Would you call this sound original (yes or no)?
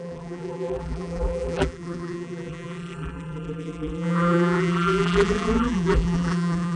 no